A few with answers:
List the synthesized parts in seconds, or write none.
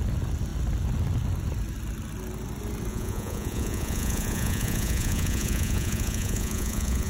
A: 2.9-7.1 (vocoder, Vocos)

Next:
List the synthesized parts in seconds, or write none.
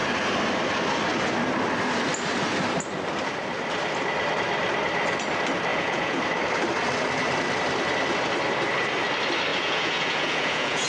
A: 5.7-6.2 (vocoder, Vocos); 9.5-10.9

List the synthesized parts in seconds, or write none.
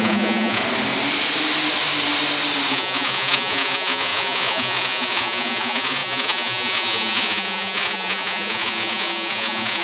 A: 0.0-0.6 (vocoder, Vocos); 2.7-9.8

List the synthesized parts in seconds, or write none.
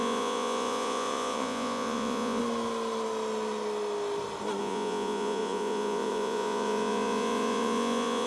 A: 0.0-2.4 (vocoder, Vocos); 4.6-8.3